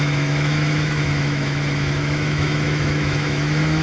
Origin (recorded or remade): remade